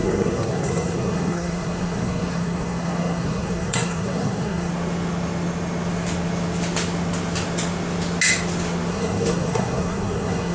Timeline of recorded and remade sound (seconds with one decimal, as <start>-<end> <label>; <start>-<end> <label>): 0.0-4.7 remade; 4.7-8.9 recorded; 8.9-10.5 remade